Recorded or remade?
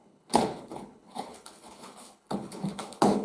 remade